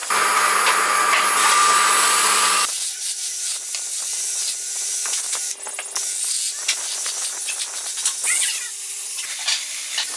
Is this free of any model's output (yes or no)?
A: yes